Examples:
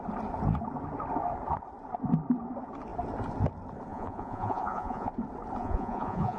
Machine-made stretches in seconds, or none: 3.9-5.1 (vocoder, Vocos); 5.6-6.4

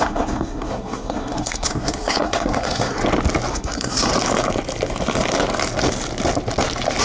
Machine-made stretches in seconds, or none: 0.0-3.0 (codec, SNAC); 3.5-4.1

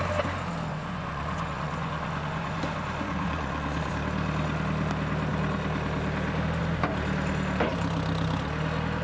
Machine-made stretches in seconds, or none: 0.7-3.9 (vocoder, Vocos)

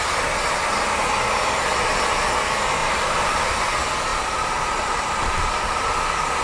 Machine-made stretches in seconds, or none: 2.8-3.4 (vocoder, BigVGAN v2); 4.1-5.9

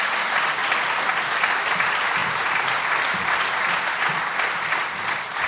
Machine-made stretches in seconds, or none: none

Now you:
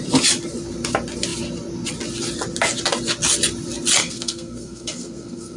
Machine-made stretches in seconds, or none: 4.0-5.6 (codec, SNAC)